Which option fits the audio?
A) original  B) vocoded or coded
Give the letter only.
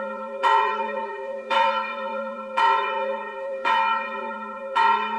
B